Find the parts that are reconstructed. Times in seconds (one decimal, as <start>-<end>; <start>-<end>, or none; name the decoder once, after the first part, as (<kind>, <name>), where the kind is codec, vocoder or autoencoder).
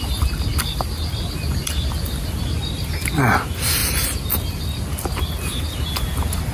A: none